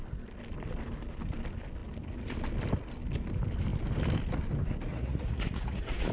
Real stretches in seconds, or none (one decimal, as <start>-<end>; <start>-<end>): 0.0-4.9